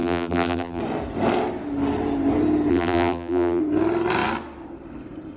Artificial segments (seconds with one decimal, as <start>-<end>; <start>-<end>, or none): 0.0-0.8; 2.7-3.6